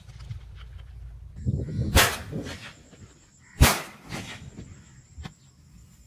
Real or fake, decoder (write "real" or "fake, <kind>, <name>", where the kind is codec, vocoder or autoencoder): fake, vocoder, BigVGAN v2